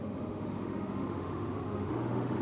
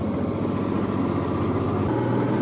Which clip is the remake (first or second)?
first